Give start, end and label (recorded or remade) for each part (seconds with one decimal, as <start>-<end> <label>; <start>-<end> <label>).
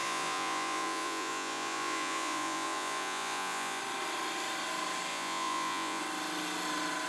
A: 0.0-3.8 remade; 3.8-5.1 recorded; 5.1-6.0 remade; 6.0-7.1 recorded